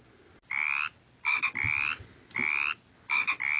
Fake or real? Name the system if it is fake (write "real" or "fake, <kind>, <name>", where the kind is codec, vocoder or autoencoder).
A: real